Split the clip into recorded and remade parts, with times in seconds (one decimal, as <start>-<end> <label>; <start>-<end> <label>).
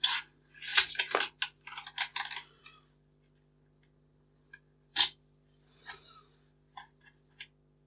0.0-0.7 recorded; 0.7-1.3 remade; 1.3-4.9 recorded; 4.9-5.8 remade; 5.8-7.9 recorded